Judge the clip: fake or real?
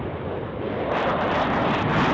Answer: real